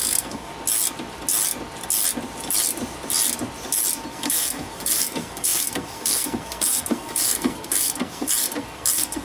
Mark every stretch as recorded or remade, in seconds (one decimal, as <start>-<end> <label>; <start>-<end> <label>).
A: 0.0-0.5 remade; 0.5-4.1 recorded; 4.1-9.2 remade